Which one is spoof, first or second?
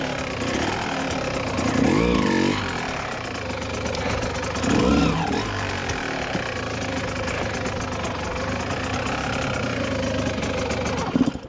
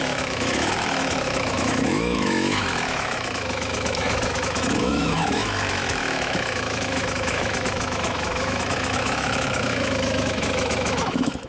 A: second